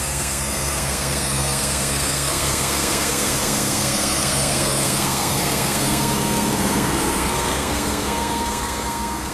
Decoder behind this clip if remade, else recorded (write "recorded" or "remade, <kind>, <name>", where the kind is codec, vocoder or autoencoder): remade, codec, SNAC